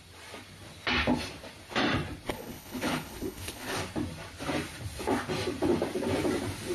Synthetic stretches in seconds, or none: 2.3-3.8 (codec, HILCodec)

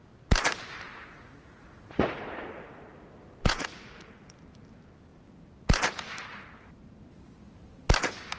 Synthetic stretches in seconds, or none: 0.9-4.1 (vocoder, Vocos)

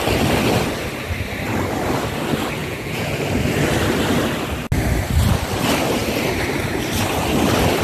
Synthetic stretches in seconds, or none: 2.6-3.2 (vocoder, Vocos)